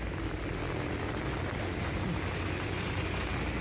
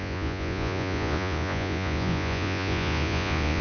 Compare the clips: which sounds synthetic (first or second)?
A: second